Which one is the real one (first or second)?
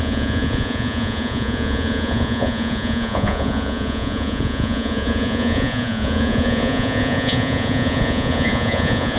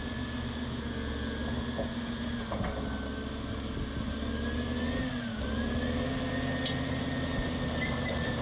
second